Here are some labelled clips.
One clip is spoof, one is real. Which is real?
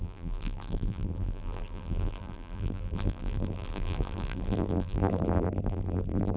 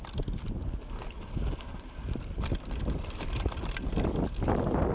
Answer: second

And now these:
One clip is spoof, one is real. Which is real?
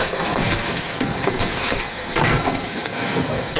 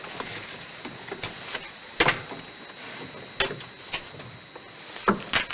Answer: second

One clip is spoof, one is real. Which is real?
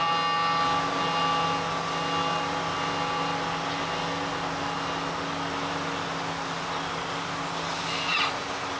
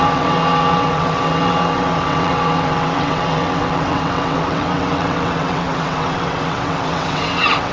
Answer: first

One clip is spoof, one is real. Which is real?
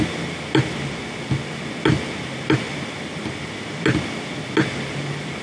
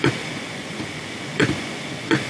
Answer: first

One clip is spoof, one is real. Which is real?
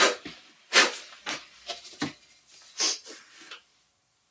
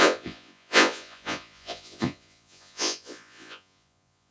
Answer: first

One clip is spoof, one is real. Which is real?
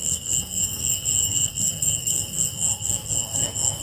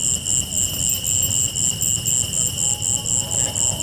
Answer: second